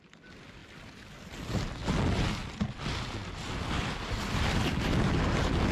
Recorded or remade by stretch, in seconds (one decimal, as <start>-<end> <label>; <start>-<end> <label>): 0.0-5.7 recorded